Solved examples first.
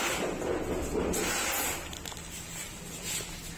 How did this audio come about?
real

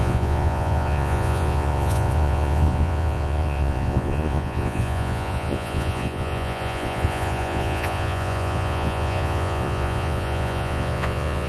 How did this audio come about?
fake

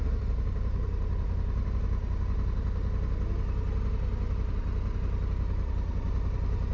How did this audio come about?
real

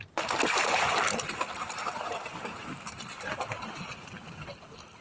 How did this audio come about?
real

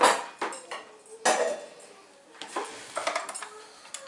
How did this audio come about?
real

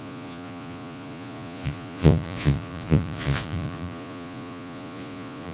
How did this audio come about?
fake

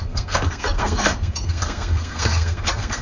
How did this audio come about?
fake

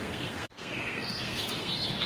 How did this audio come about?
fake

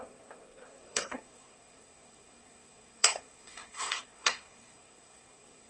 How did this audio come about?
fake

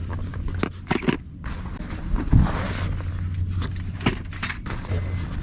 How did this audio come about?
real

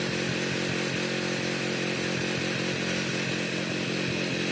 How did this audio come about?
real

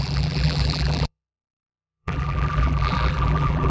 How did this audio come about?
fake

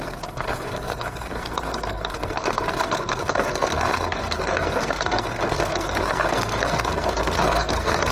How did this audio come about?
fake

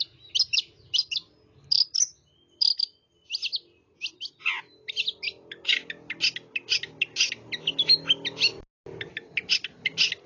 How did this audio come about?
real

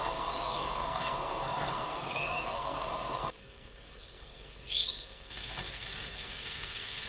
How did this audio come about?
fake